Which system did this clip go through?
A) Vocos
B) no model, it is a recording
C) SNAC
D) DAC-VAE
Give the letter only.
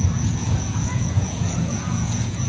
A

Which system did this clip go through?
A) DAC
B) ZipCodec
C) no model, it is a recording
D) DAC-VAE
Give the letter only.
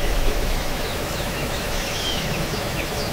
D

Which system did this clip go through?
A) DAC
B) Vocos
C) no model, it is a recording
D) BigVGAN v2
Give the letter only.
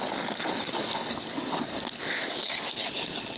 A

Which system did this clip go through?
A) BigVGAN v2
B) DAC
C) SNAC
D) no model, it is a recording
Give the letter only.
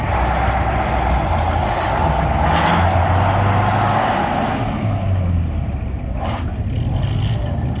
D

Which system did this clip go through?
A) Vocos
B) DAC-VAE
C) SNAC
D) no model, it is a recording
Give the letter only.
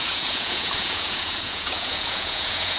A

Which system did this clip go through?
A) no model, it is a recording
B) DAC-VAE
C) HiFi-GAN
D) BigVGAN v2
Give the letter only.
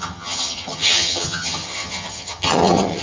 C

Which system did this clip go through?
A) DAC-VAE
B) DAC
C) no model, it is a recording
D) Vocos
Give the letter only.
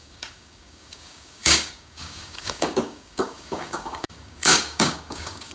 B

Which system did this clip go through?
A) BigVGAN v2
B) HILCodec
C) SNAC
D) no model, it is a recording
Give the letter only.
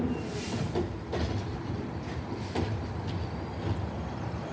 D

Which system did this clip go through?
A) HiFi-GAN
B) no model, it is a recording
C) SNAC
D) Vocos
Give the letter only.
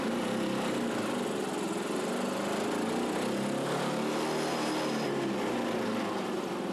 B